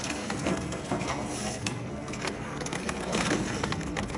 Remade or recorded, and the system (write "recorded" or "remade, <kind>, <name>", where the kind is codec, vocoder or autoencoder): remade, codec, SNAC